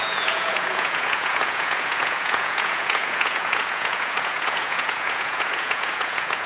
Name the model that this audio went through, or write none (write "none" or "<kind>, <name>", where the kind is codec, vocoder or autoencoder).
vocoder, Vocos